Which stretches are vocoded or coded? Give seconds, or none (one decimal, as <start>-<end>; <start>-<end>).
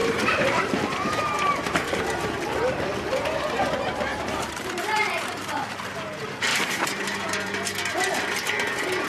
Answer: 0.0-2.0; 4.1-5.2; 6.5-7.5